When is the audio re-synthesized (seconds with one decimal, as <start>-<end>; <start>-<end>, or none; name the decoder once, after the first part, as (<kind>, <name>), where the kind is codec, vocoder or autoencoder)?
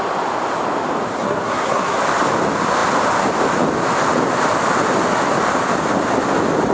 1.1-2.0 (codec, SNAC)